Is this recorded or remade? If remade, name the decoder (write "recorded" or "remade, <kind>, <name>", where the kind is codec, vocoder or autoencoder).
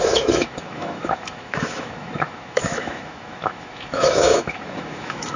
remade, autoencoder, DAC-VAE